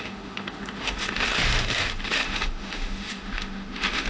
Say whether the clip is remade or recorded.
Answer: remade